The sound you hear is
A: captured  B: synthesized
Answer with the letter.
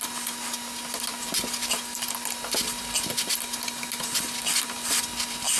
A